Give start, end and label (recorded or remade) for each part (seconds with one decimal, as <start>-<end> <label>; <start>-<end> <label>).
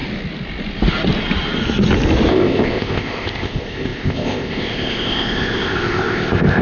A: 0.0-2.3 recorded; 2.3-6.6 remade